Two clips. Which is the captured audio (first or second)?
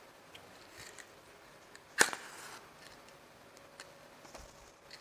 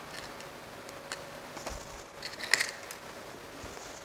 second